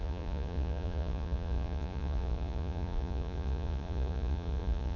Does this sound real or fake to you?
fake